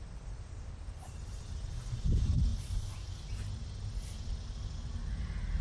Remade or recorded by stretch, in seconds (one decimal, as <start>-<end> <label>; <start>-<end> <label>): 0.0-5.6 recorded